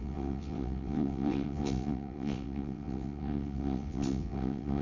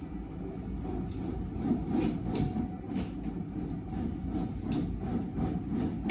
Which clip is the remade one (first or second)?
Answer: first